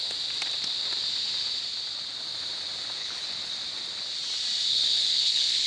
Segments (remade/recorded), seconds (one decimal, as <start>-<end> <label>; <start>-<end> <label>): 0.0-3.0 recorded; 3.0-3.5 remade; 3.5-4.8 recorded; 4.8-5.7 remade